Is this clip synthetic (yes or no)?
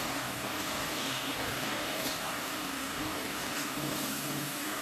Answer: yes